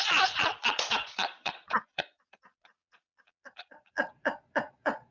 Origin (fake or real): fake